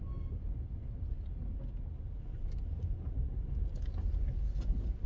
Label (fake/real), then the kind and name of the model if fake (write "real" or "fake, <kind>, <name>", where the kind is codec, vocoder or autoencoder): real